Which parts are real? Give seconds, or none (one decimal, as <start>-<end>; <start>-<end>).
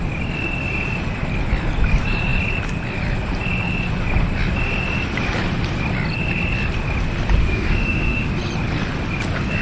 0.0-7.4; 8.3-9.6